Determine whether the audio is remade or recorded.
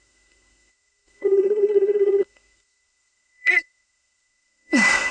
remade